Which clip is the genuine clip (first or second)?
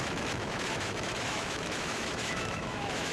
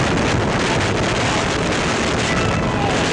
second